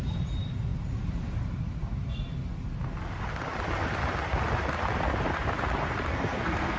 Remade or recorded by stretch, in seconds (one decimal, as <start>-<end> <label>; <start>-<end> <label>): 0.0-6.1 recorded; 6.1-6.8 remade